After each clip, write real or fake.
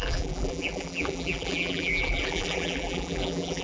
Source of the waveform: fake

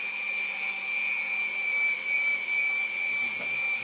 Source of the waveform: fake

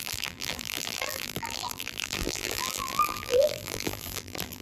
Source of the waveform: fake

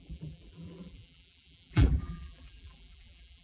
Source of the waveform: fake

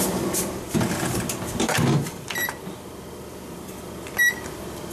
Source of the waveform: fake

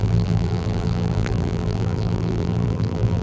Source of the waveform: fake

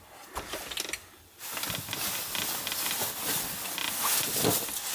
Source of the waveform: real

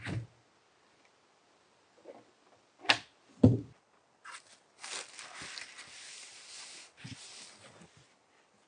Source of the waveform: real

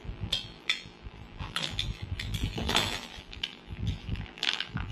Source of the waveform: fake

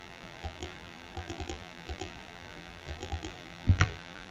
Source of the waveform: fake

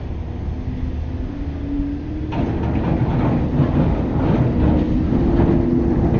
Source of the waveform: real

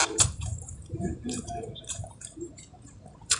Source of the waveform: fake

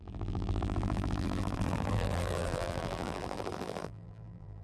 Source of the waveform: fake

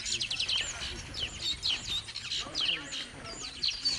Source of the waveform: real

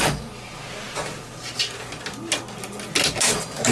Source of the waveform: real